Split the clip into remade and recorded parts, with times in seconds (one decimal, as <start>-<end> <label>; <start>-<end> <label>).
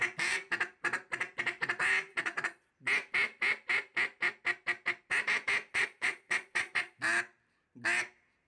0.0-2.1 recorded; 2.1-2.7 remade; 2.7-5.7 recorded; 5.7-7.0 remade; 7.0-8.5 recorded